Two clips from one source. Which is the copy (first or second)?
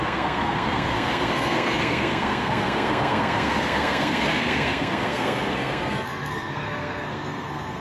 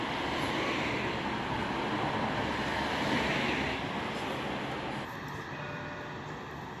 first